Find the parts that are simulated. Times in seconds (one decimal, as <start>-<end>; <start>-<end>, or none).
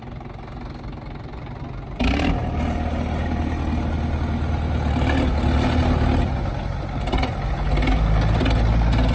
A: none